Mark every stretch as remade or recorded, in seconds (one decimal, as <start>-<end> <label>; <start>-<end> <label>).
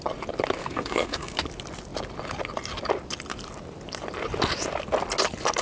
0.0-0.6 recorded; 0.6-1.4 remade; 1.4-5.6 recorded